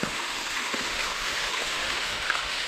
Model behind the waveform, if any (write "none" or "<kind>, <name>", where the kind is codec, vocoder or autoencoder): autoencoder, DAC-VAE